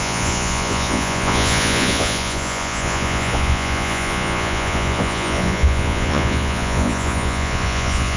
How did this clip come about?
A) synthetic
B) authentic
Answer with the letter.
A